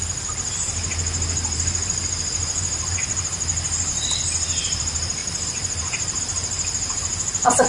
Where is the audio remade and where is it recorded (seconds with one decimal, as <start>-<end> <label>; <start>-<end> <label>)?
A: 0.0-3.5 remade; 3.5-4.6 recorded; 4.6-7.7 remade